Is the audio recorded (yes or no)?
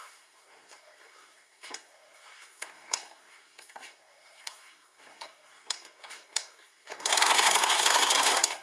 no